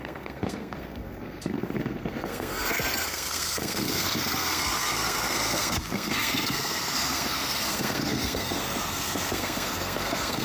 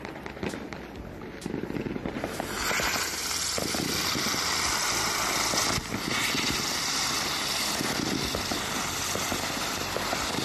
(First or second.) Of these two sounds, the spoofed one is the first